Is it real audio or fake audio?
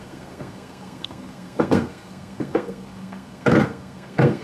fake